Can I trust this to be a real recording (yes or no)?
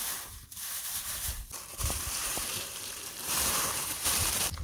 no